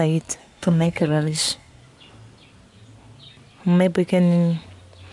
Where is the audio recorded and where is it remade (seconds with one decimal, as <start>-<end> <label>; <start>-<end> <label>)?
0.0-0.4 recorded; 0.4-1.8 remade; 1.8-5.1 recorded

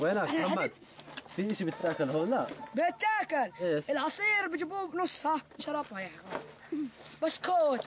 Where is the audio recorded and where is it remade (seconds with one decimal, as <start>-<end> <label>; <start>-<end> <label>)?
0.0-0.4 recorded; 0.4-1.0 remade; 1.0-7.9 recorded

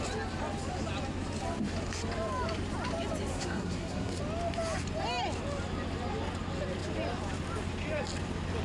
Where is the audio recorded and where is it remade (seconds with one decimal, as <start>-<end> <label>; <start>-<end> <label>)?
0.0-3.3 recorded; 3.3-4.2 remade; 4.2-8.6 recorded